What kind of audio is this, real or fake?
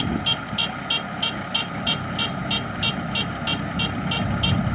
real